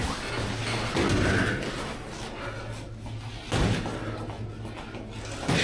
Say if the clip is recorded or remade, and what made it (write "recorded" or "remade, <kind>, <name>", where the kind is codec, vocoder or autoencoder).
recorded